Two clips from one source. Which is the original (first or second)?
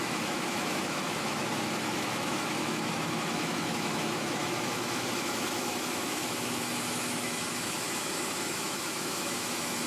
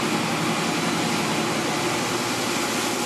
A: second